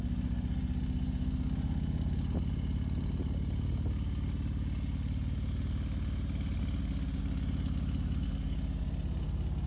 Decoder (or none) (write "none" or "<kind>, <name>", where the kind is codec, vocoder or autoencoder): none